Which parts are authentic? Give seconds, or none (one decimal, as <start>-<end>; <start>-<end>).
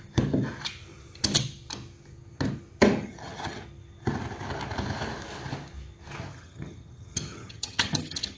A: 0.0-3.0; 3.6-6.3